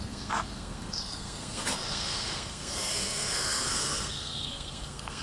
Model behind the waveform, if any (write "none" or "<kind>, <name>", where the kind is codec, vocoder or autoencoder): codec, SNAC